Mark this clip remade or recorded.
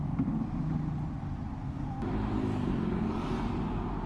recorded